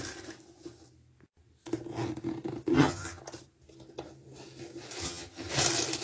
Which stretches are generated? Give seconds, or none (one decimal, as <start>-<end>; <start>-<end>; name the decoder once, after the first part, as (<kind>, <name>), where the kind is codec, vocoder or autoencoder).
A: 2.7-3.2 (vocoder, HiFi-GAN); 5.0-5.5